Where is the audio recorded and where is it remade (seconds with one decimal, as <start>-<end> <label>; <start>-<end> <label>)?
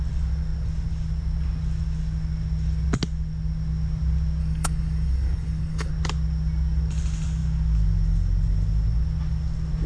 0.0-4.4 recorded; 4.4-5.9 remade; 5.9-9.9 recorded